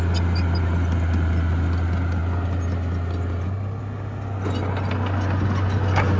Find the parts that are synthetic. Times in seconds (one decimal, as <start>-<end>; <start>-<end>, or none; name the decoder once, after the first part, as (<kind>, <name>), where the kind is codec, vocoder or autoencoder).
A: none